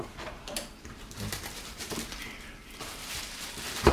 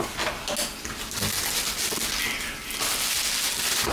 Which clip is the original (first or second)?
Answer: second